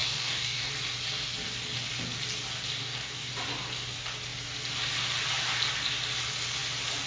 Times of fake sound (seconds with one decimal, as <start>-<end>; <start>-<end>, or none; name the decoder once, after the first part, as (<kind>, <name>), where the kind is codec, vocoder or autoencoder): 0.0-0.7 (codec, DAC); 2.8-3.3